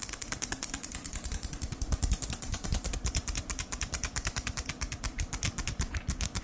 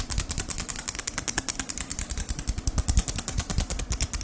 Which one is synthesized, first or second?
first